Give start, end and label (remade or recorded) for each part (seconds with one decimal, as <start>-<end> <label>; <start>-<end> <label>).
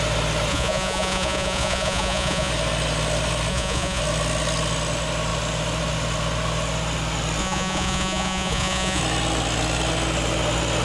0.0-0.5 recorded; 0.5-2.5 remade; 2.5-3.5 recorded; 3.5-4.0 remade; 4.0-7.4 recorded; 7.4-9.0 remade; 9.0-10.8 recorded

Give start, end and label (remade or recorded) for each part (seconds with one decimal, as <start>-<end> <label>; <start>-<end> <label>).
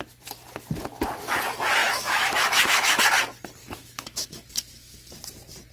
0.0-1.8 recorded; 1.8-3.0 remade; 3.0-3.6 recorded; 3.6-5.1 remade; 5.1-5.7 recorded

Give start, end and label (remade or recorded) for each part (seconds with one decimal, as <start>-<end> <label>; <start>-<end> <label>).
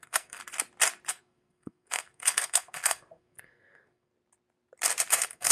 0.0-0.4 remade; 0.4-1.1 recorded; 1.1-4.1 remade; 4.1-5.1 recorded; 5.1-5.5 remade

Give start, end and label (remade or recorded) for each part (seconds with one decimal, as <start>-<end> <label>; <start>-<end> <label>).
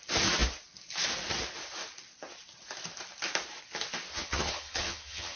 0.0-4.1 recorded; 4.1-5.4 remade